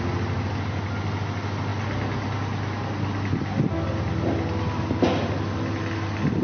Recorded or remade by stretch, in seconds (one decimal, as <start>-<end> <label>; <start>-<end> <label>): 0.0-6.4 recorded